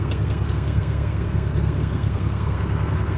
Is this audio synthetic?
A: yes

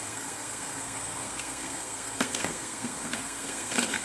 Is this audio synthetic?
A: yes